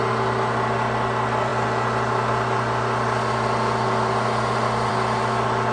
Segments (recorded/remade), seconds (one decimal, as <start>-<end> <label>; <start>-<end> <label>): 0.0-5.7 recorded